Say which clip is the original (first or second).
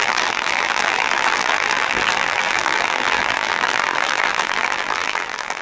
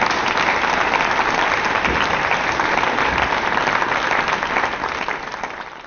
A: second